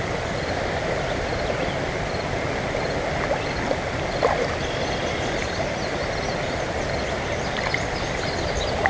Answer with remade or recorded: recorded